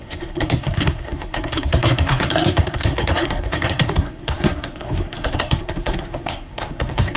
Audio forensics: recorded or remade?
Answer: remade